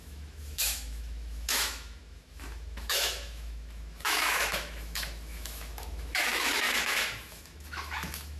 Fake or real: fake